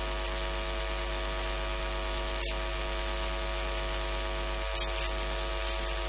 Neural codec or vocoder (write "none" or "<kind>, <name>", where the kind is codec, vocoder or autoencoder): none